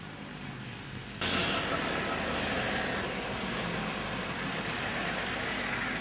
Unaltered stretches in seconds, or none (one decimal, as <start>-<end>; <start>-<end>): 0.0-6.0